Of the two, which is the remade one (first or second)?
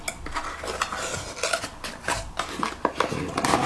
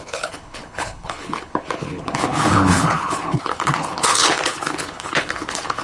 second